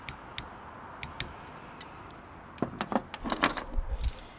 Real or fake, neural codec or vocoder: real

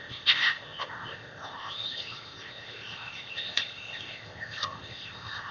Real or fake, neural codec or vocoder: fake, codec, ZipCodec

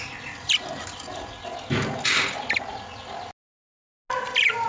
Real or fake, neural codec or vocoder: real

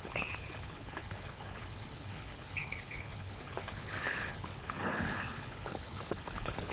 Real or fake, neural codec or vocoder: fake, codec, HILCodec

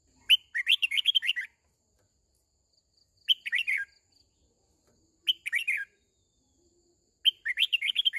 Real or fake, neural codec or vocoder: real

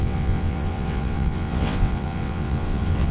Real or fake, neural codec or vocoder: fake, vocoder, WaveNeXt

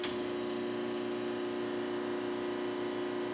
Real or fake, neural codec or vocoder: real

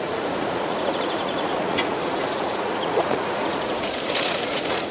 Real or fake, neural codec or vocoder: fake, vocoder, Vocos